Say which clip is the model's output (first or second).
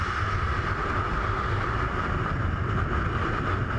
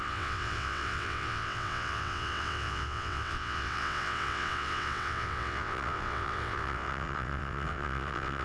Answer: second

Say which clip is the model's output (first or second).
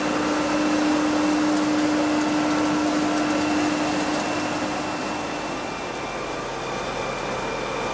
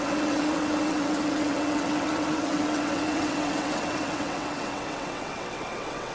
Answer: second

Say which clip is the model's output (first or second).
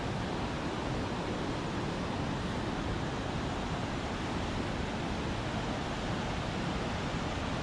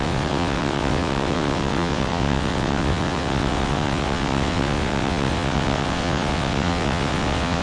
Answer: second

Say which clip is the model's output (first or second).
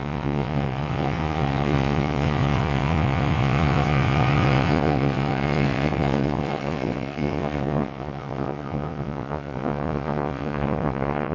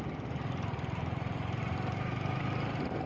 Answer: first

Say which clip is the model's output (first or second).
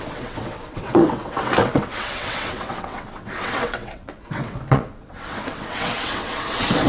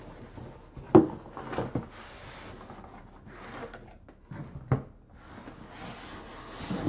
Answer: first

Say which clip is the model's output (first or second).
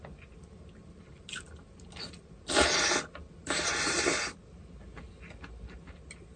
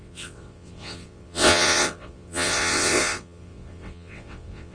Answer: second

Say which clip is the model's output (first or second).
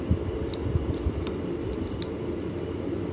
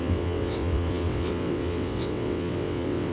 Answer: second